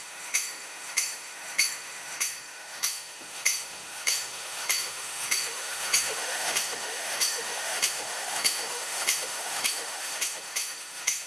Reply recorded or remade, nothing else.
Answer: remade